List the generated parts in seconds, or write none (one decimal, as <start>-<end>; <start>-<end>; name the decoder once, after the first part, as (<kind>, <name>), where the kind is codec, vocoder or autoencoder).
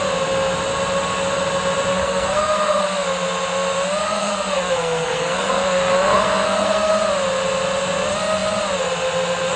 1.9-2.8 (codec, SNAC); 4.0-6.9